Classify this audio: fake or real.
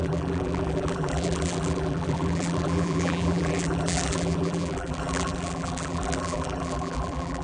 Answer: fake